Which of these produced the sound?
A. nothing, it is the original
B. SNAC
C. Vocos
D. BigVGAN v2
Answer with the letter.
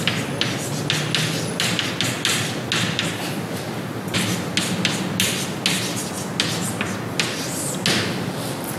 A